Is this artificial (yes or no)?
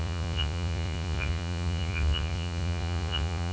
yes